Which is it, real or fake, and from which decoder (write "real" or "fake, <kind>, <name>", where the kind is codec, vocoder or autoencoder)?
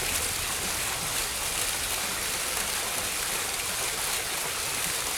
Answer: real